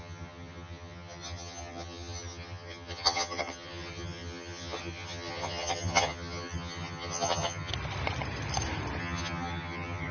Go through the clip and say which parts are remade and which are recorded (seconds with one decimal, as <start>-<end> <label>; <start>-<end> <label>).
0.0-7.7 remade; 7.7-9.0 recorded; 9.0-10.1 remade